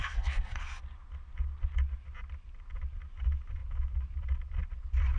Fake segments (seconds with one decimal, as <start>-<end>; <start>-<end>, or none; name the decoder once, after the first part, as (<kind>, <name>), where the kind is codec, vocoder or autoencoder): 0.0-0.6 (codec, SNAC)